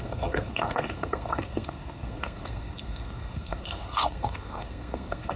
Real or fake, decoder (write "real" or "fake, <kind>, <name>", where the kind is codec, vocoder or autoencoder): fake, codec, SNAC